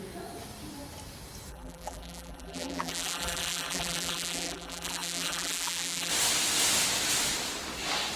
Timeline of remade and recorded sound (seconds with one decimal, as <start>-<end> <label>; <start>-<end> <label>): 0.0-1.5 recorded; 1.5-6.1 remade; 6.1-8.2 recorded